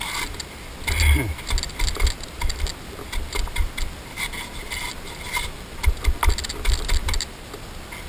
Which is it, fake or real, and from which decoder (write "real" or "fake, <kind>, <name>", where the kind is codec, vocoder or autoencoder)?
real